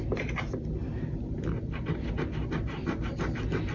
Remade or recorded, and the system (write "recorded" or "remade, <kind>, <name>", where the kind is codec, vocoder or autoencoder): recorded